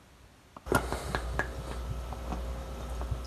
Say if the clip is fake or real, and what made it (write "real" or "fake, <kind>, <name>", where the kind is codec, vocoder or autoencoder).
real